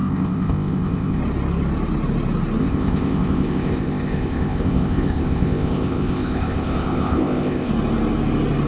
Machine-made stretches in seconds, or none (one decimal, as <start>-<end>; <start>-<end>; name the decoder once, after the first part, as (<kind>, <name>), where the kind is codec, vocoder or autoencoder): 0.0-1.2 (codec, ZipCodec); 2.6-7.7